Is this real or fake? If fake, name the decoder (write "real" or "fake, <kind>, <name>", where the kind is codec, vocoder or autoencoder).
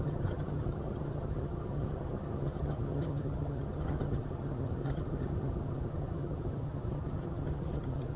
fake, vocoder, HiFi-GAN